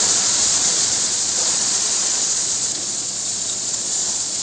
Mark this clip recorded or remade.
remade